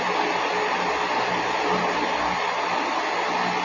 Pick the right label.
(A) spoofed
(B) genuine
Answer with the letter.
B